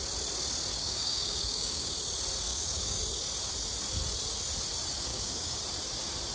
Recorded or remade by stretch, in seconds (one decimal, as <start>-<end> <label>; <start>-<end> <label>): 0.0-0.7 recorded; 0.7-1.9 remade; 1.9-2.5 recorded; 2.5-3.0 remade; 3.0-5.1 recorded; 5.1-5.6 remade; 5.6-6.3 recorded